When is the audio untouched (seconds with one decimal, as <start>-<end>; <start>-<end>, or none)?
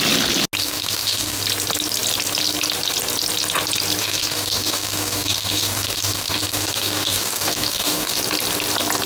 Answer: 0.0-0.6; 1.4-4.0; 8.2-9.1